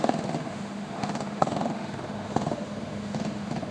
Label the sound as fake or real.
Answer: fake